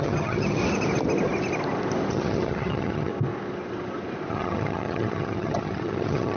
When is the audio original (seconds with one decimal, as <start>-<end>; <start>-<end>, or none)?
0.6-2.1; 3.1-4.3